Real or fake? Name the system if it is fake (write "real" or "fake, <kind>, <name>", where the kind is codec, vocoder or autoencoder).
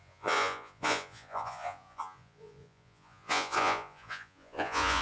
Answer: fake, vocoder, Vocos